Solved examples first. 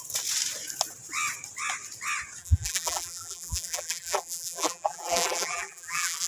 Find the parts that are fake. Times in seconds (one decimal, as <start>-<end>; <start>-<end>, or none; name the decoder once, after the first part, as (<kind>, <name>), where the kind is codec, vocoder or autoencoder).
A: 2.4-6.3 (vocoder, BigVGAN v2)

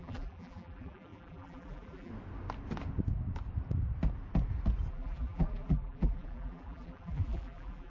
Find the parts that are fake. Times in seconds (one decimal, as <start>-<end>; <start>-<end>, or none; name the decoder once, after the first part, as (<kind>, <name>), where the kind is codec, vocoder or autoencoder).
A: 0.0-2.1 (vocoder, BigVGAN v2); 4.9-7.9

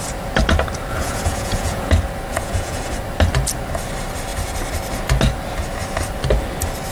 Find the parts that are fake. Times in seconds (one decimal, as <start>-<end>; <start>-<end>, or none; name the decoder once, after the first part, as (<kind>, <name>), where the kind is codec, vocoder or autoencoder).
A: 0.9-1.9 (vocoder, Vocos); 2.3-3.0